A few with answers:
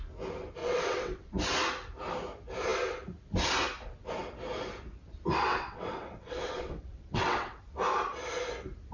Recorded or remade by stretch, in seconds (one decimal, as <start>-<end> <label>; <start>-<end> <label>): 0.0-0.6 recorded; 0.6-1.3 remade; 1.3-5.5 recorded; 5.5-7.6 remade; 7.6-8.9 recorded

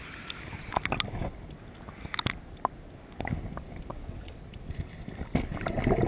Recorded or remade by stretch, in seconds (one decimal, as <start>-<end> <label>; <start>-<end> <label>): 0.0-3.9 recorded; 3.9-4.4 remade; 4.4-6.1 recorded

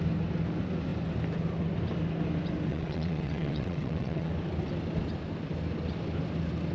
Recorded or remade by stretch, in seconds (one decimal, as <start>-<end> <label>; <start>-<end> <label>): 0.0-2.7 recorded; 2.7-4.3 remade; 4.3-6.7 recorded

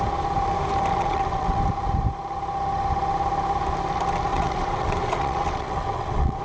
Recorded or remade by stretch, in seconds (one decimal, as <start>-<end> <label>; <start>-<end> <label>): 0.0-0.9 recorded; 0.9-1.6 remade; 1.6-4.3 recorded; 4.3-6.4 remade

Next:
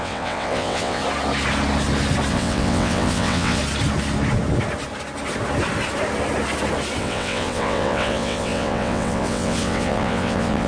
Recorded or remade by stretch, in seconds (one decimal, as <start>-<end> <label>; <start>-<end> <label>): 0.0-1.0 remade; 1.0-2.3 recorded; 2.3-3.6 remade; 3.6-7.0 recorded; 7.0-10.7 remade